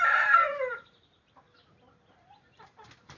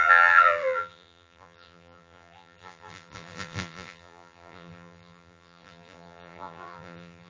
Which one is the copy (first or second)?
second